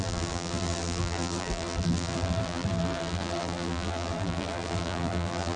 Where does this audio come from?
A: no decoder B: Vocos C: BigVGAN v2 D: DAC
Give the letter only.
C